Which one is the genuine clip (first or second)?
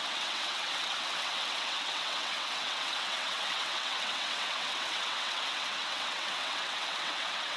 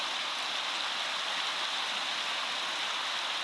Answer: second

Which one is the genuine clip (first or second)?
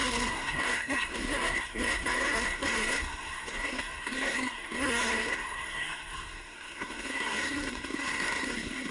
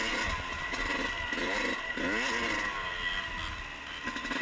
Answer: second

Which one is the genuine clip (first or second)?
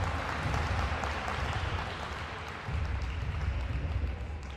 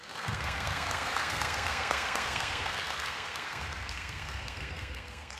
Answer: first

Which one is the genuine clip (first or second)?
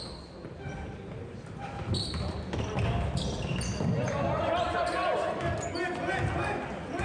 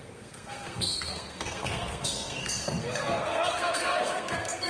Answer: first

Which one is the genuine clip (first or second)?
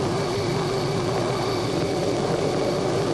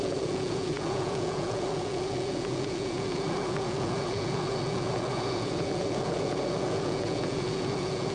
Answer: first